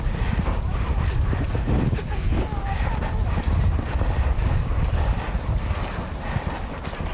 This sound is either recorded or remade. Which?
recorded